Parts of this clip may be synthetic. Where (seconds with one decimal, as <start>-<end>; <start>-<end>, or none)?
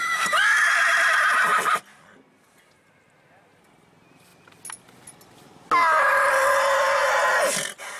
none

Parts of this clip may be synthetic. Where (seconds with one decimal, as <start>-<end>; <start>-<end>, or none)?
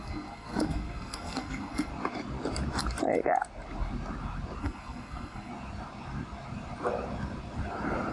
0.0-1.9; 4.6-5.5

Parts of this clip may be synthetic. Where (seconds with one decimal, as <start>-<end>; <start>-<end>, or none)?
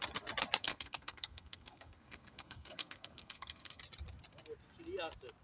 0.6-3.8